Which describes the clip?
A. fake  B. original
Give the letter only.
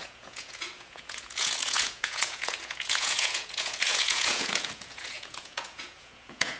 A